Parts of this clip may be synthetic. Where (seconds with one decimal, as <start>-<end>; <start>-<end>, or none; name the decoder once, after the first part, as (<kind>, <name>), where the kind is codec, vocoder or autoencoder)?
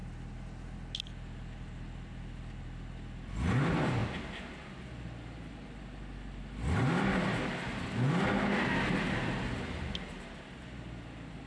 none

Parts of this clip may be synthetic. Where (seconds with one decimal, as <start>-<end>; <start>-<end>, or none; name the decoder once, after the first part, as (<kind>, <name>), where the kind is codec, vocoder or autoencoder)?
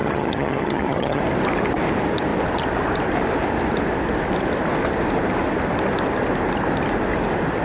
0.0-1.2 (vocoder, HiFi-GAN)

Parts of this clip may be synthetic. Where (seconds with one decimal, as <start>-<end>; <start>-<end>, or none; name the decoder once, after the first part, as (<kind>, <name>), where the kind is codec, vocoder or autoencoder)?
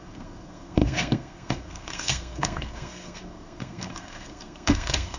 0.0-5.2 (codec, SNAC)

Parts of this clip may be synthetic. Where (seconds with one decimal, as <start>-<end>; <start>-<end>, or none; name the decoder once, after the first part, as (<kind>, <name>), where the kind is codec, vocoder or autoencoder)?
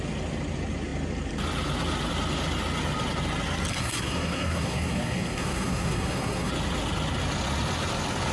3.7-6.5 (codec, SNAC)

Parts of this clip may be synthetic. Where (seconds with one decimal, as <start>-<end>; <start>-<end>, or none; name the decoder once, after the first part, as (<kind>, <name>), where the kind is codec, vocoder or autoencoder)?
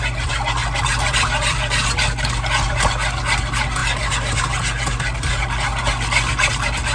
none